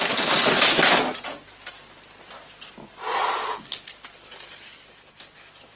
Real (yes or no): yes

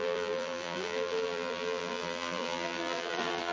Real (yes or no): no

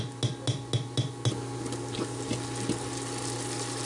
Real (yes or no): yes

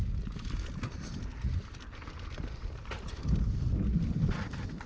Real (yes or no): yes